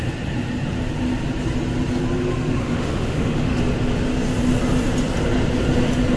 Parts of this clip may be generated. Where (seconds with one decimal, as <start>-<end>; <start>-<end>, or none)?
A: 2.6-3.6